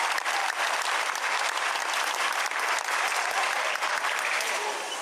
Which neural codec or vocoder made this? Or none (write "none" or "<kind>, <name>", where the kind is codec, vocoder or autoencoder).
none